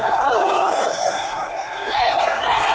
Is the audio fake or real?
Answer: fake